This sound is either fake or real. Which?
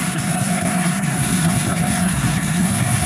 fake